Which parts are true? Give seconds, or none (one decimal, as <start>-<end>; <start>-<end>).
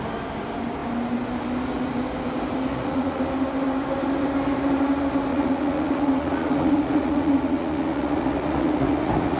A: 0.0-2.7; 3.2-5.3